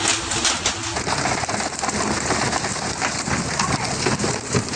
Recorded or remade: recorded